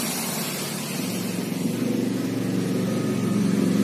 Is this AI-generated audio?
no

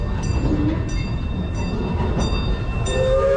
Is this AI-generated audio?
no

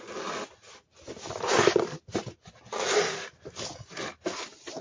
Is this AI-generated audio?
no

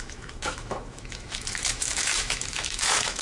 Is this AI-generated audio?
yes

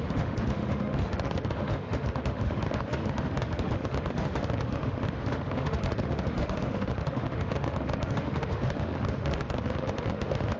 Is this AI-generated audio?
yes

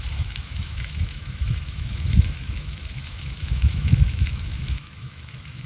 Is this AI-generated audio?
yes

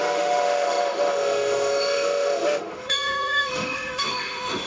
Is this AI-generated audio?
yes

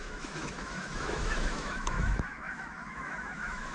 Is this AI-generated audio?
yes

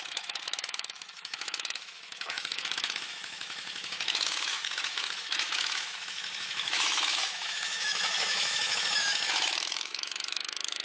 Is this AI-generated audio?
yes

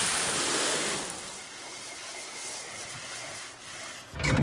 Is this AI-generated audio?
no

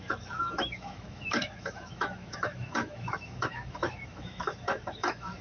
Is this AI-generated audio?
yes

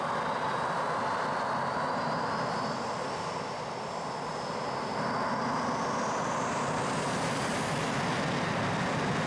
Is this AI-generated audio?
no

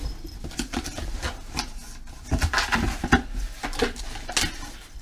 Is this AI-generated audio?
no